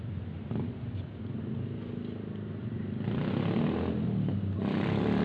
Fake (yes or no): no